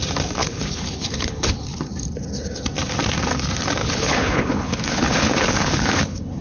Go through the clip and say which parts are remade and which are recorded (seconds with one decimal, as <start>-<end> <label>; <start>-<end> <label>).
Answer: 0.0-0.4 recorded; 0.4-1.8 remade; 1.8-3.8 recorded; 3.8-6.4 remade